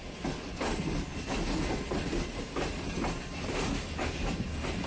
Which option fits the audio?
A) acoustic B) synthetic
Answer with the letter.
A